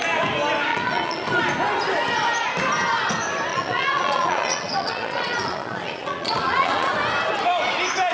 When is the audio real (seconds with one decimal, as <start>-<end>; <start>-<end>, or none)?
0.0-0.7; 1.4-3.5; 6.9-8.1